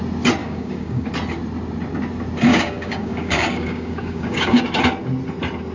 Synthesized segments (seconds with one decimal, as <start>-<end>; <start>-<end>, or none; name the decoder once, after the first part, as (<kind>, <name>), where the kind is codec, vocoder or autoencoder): 0.4-1.1 (codec, DAC); 2.5-4.6